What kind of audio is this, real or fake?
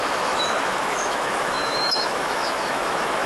fake